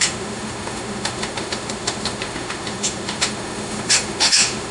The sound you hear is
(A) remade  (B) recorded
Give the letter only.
A